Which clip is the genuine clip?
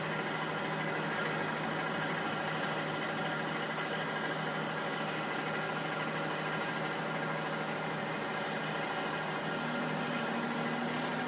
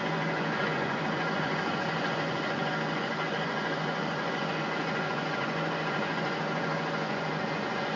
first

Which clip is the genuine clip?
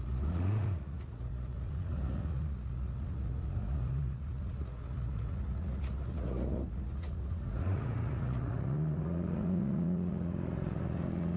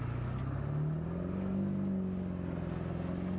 second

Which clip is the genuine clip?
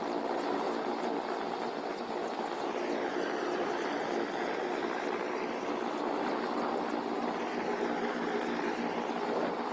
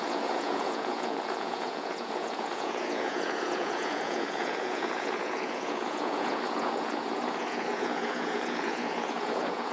first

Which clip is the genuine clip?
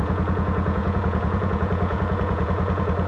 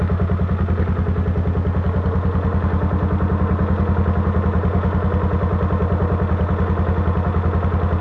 second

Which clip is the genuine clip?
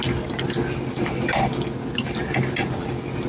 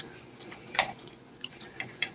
first